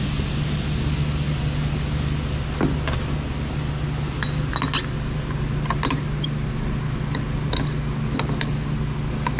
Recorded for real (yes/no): yes